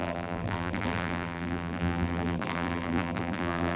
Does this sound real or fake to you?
fake